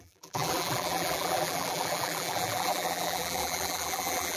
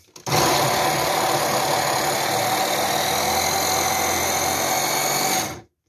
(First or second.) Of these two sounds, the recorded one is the second